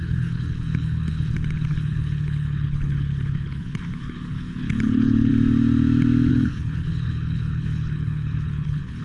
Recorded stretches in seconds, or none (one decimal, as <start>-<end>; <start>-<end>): 5.3-6.3